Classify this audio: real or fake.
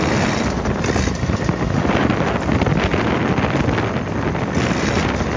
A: real